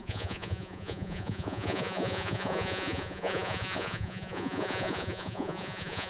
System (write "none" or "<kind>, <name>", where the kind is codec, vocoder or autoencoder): vocoder, Vocos